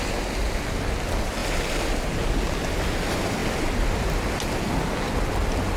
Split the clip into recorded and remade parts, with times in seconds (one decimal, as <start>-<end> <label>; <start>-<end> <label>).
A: 0.0-5.8 recorded